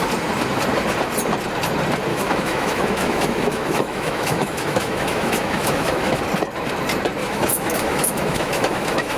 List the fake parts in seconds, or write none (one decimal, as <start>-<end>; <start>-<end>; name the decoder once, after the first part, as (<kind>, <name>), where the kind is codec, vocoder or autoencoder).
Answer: 2.1-6.2 (autoencoder, DAC-VAE); 7.2-9.2